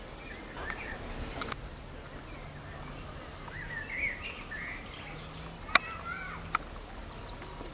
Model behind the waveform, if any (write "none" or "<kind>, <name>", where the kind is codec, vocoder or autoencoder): none